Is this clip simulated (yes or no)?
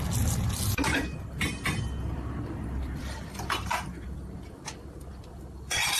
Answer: yes